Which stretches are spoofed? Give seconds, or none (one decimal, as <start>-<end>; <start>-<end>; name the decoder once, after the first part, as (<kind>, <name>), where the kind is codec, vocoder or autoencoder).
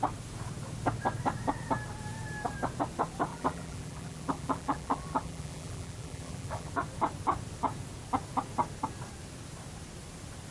3.3-6.7 (vocoder, BigVGAN v2)